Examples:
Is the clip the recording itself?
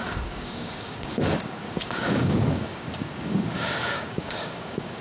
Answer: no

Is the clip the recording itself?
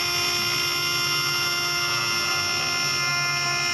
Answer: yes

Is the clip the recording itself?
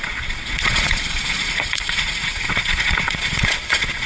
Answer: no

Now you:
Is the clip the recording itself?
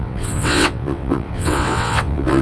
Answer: no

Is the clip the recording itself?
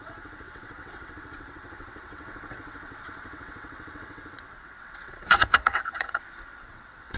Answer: no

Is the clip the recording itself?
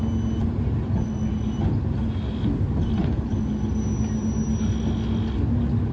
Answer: yes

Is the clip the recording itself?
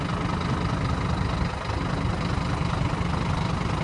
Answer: yes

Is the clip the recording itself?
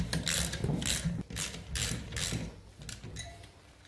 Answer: yes